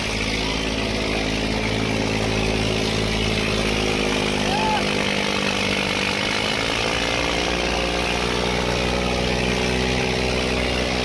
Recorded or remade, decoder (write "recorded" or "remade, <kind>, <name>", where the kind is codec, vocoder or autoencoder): recorded